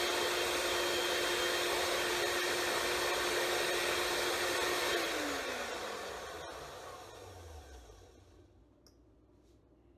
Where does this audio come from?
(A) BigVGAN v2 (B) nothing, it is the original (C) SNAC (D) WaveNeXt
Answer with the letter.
B